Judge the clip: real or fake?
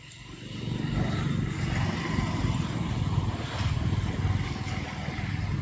real